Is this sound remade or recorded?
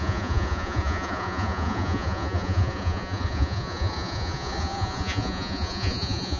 remade